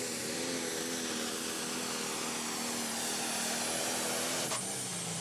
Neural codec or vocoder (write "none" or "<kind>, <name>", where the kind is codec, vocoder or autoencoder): none